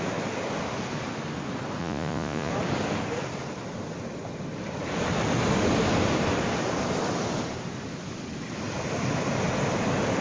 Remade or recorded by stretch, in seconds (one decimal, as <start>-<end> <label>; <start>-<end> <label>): 0.0-1.8 recorded; 1.8-2.5 remade; 2.5-10.2 recorded